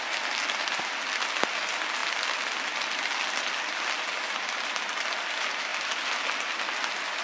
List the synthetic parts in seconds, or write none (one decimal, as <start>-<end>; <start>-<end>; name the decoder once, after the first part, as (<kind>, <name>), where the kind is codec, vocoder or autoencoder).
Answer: none